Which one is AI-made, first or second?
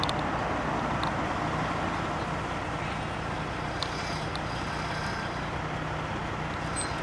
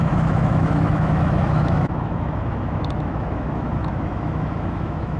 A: second